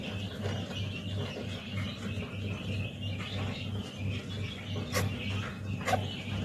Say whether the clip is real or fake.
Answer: real